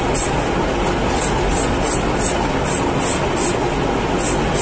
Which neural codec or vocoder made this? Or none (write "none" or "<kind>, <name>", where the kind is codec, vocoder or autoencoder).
none